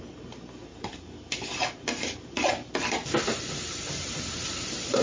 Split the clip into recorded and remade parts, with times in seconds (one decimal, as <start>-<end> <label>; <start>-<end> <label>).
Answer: 0.0-5.0 recorded